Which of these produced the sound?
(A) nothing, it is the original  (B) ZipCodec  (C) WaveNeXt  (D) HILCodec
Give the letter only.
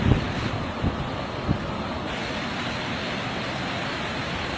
A